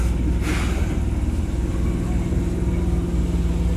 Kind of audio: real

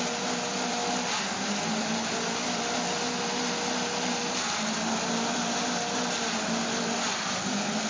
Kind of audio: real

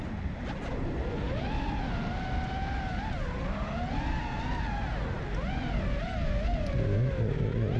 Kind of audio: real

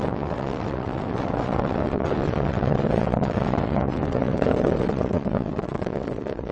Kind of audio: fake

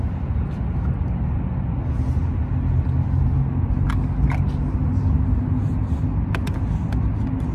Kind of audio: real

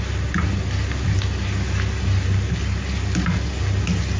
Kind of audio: real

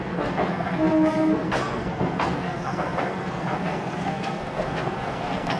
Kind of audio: fake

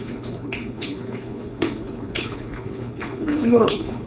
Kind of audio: fake